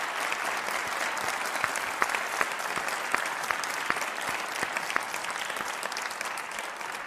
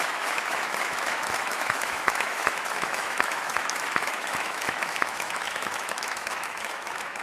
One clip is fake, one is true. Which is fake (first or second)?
second